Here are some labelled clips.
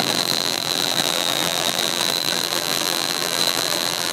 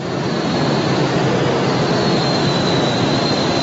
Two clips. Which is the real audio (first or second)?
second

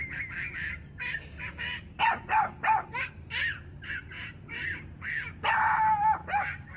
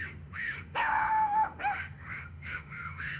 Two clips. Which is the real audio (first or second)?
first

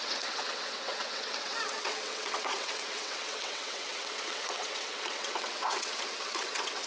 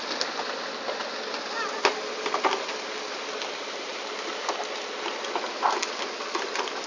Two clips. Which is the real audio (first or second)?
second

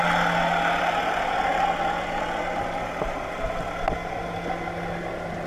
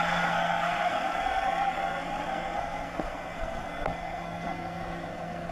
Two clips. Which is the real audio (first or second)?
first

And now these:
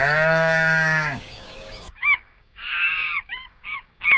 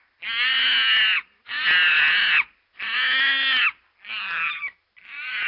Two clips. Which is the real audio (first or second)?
second